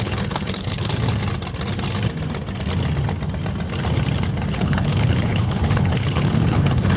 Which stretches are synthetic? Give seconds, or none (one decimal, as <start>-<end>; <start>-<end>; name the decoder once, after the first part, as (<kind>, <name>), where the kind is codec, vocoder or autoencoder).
0.0-0.9 (codec, HILCodec); 4.5-7.0